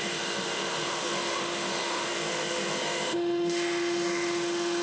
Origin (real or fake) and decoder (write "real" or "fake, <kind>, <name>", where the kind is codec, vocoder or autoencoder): fake, autoencoder, DAC-VAE